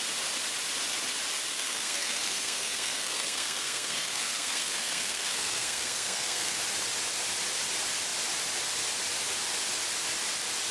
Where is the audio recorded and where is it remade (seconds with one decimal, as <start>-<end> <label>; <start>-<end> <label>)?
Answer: 0.0-1.5 recorded; 1.5-6.6 remade; 6.6-10.7 recorded